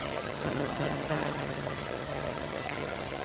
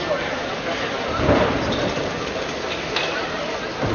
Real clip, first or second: second